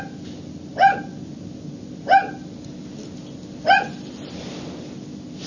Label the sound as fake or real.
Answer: real